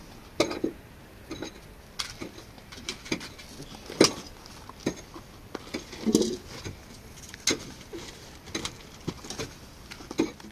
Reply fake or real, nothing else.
real